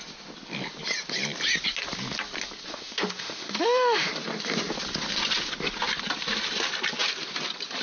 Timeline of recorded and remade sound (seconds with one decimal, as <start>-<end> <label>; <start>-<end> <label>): 0.0-2.7 recorded; 2.7-4.1 remade; 4.1-7.8 recorded